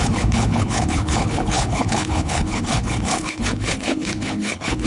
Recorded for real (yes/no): no